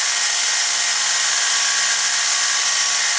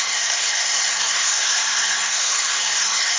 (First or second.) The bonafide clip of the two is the first